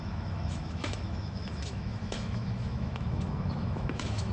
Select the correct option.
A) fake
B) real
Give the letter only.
A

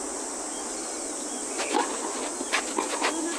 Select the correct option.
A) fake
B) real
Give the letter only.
B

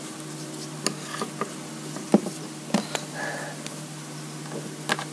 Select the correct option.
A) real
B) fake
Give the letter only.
A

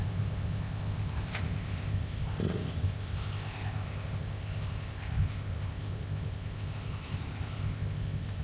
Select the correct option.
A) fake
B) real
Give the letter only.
A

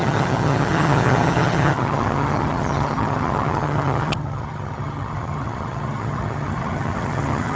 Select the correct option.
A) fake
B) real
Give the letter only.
A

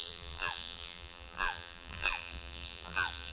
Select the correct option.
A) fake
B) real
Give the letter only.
A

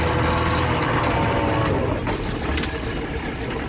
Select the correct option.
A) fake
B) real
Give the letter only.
B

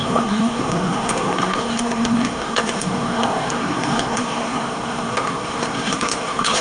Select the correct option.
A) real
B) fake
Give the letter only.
B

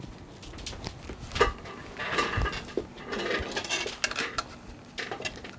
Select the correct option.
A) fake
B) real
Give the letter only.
B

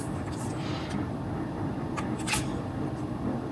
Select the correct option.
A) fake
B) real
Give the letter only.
A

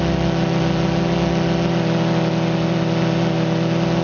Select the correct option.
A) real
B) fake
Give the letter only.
A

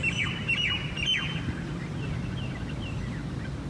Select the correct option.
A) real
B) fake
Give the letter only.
A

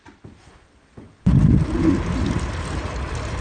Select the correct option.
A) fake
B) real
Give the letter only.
B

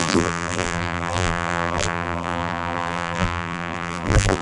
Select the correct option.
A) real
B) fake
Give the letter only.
B